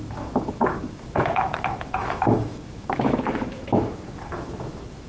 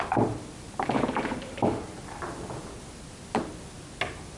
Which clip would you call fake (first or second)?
first